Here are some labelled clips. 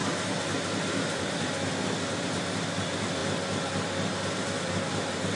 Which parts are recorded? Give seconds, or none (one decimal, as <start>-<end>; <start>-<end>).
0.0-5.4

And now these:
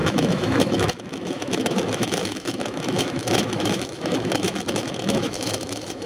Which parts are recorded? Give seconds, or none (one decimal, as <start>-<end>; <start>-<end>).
none

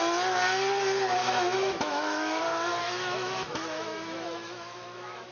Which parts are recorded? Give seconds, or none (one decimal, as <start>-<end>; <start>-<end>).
0.0-1.2; 2.4-2.8

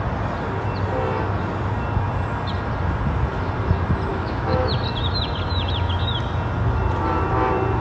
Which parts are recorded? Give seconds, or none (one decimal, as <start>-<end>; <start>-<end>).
0.0-4.1; 4.7-7.8

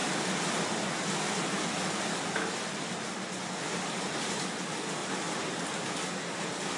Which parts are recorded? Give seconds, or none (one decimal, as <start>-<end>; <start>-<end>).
0.0-6.8

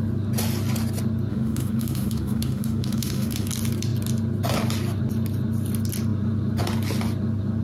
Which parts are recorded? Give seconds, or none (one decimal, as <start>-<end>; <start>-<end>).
0.0-1.3; 3.5-7.6